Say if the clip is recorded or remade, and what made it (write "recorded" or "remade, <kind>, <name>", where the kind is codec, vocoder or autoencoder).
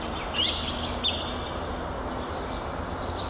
recorded